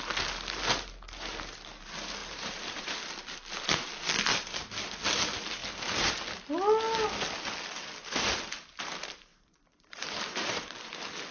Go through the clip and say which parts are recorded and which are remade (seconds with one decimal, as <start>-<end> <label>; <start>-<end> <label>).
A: 0.0-2.2 recorded; 2.2-3.1 remade; 3.1-9.3 recorded; 9.3-10.6 remade; 10.6-11.3 recorded